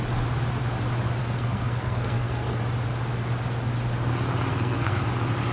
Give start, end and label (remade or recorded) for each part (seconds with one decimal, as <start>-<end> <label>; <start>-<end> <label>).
0.0-1.2 recorded; 1.2-2.6 remade; 2.6-4.5 recorded; 4.5-5.0 remade; 5.0-5.5 recorded